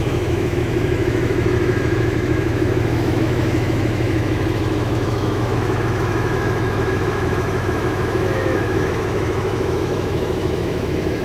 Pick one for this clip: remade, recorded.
remade